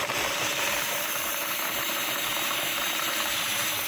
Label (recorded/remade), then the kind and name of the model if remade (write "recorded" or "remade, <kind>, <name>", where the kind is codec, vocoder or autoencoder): remade, vocoder, BigVGAN v2